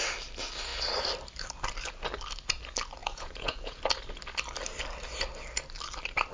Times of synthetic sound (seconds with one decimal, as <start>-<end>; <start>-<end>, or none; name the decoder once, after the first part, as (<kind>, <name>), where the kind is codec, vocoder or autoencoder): 3.0-3.8 (vocoder, Vocos)